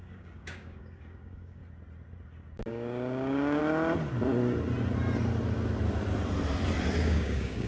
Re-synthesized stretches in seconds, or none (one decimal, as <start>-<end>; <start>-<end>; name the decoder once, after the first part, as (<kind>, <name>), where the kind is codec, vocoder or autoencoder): 0.0-1.6 (codec, DAC); 2.7-3.6; 7.0-7.7